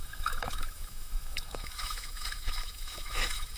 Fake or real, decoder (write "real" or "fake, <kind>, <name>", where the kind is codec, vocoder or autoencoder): fake, autoencoder, DAC-VAE